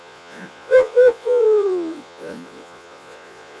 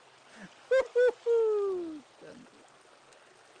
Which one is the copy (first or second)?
first